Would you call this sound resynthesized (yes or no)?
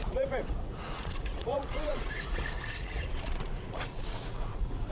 yes